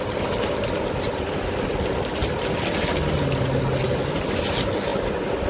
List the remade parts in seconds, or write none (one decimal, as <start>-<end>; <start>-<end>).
none